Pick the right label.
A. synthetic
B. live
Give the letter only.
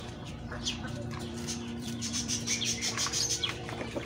A